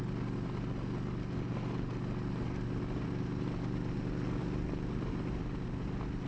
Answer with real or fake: real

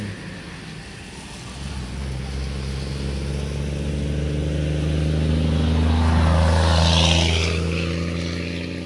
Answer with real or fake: real